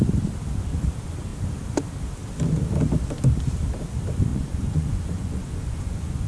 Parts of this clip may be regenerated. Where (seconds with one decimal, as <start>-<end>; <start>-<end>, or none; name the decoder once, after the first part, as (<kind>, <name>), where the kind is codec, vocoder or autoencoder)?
4.3-6.3 (vocoder, Vocos)